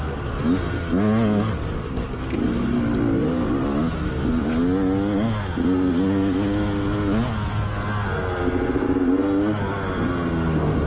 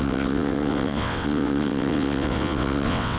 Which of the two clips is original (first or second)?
first